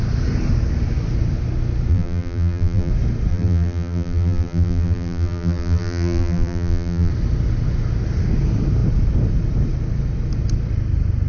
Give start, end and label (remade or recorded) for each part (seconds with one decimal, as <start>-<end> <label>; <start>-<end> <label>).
0.0-1.9 recorded; 1.9-2.9 remade; 2.9-3.3 recorded; 3.3-7.1 remade; 7.1-11.3 recorded